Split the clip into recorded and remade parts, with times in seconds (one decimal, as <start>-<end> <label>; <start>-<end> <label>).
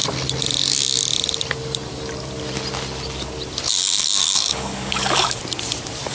0.0-3.7 recorded; 3.7-5.4 remade; 5.4-6.1 recorded